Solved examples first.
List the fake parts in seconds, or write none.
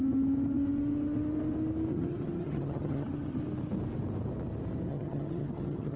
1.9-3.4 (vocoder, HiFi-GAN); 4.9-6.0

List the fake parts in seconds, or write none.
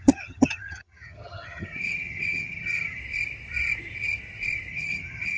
0.0-3.0 (vocoder, HiFi-GAN); 4.7-5.4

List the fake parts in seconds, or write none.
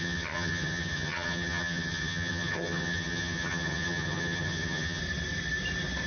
0.0-5.0 (vocoder, HiFi-GAN)